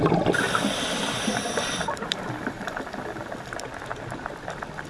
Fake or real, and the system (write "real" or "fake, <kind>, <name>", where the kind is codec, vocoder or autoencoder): fake, vocoder, BigVGAN v2